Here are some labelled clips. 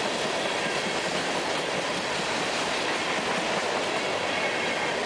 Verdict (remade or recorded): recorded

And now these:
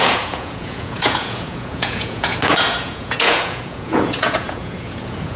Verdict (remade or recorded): remade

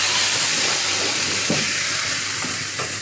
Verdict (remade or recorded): remade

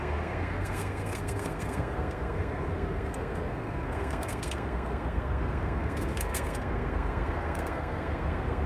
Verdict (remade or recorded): remade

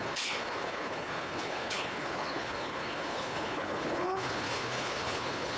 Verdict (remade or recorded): remade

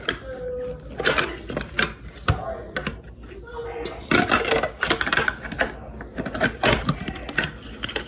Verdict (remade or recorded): recorded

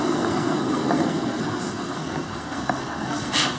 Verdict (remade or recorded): remade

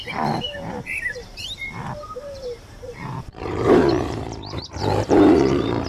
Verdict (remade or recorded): remade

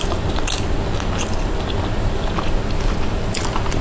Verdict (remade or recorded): recorded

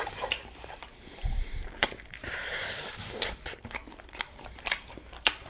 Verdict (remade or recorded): remade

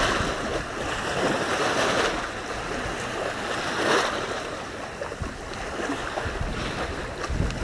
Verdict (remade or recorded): recorded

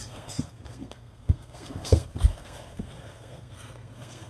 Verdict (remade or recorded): remade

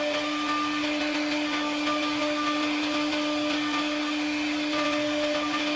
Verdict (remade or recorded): recorded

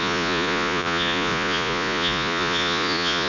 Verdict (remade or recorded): remade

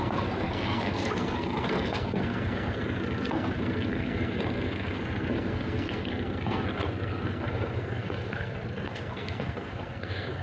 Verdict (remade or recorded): remade